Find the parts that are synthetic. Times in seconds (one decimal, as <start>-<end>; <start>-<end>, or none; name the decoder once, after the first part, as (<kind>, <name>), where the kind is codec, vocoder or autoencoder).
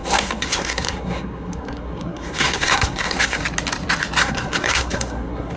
0.0-3.4 (codec, SNAC); 4.2-5.6